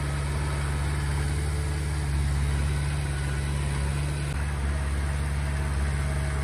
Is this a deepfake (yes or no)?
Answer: no